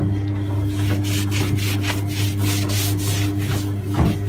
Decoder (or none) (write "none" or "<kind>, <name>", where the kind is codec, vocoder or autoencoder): none